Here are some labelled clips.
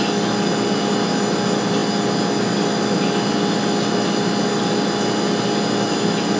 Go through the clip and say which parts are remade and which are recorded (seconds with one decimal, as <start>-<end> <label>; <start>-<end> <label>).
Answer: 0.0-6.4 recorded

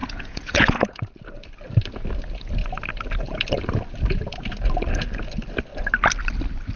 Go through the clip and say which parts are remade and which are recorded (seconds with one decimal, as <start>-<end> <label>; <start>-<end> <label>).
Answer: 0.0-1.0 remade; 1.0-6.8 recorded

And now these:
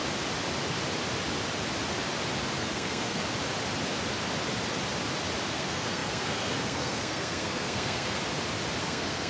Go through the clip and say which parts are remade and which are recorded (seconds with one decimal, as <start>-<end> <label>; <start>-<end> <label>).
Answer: 0.0-2.6 recorded; 2.6-3.2 remade; 3.2-5.5 recorded; 5.5-8.2 remade; 8.2-8.8 recorded; 8.8-9.3 remade

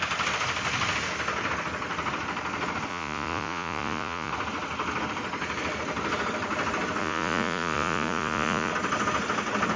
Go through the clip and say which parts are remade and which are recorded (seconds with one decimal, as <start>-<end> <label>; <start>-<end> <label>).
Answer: 0.0-2.9 recorded; 2.9-4.3 remade; 4.3-7.0 recorded; 7.0-8.7 remade; 8.7-9.8 recorded

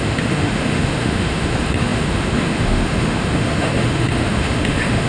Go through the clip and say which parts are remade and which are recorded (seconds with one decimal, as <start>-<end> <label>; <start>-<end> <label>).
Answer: 0.0-5.1 remade

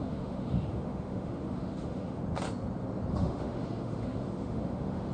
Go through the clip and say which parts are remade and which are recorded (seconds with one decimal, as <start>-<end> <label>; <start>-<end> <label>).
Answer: 0.0-2.2 remade; 2.2-3.1 recorded; 3.1-5.1 remade

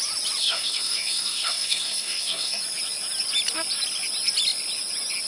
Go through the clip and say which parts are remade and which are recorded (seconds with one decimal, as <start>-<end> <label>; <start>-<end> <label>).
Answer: 0.0-0.4 recorded; 0.4-2.6 remade; 2.6-5.3 recorded

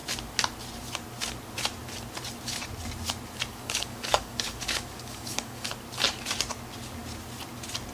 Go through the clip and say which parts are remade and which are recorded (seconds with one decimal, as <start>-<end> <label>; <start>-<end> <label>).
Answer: 0.0-3.5 recorded; 3.5-5.7 remade; 5.7-7.9 recorded